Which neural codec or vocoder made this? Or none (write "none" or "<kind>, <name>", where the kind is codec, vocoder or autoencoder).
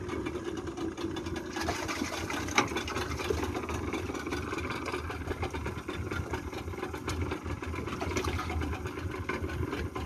none